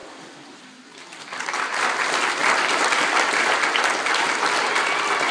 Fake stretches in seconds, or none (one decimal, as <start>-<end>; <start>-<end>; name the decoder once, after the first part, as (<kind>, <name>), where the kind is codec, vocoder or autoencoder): 0.0-5.3 (vocoder, BigVGAN v2)